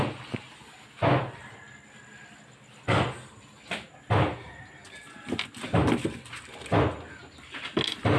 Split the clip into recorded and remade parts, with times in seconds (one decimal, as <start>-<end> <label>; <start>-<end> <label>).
0.0-8.2 recorded

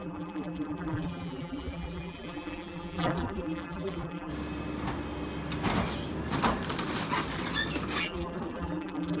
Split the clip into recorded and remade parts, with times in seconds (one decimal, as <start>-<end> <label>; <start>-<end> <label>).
0.0-4.3 remade; 4.3-8.0 recorded; 8.0-9.2 remade

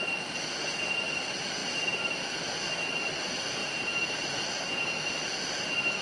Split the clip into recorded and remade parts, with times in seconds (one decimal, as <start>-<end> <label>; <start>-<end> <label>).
0.0-3.6 recorded; 3.6-4.7 remade; 4.7-6.0 recorded

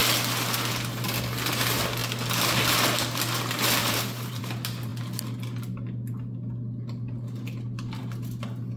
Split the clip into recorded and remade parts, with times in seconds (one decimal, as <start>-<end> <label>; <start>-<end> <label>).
0.0-3.8 recorded; 3.8-4.4 remade; 4.4-8.8 recorded

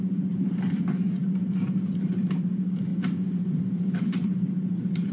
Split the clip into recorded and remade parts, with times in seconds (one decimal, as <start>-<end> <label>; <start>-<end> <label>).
0.0-2.9 remade; 2.9-3.6 recorded; 3.6-5.1 remade